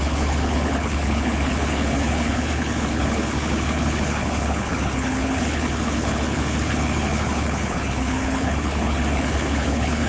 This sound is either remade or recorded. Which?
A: remade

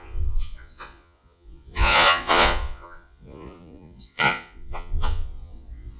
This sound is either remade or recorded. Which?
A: remade